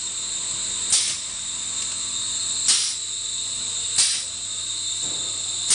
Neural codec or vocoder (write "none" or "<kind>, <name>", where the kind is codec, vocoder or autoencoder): none